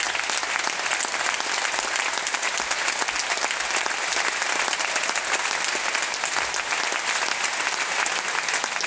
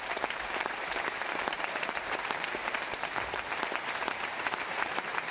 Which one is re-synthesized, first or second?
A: second